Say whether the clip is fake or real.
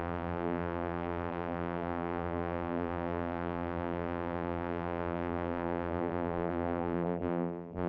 fake